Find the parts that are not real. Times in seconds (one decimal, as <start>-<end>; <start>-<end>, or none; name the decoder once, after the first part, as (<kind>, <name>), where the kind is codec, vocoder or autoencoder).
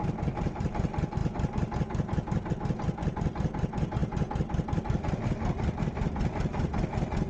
none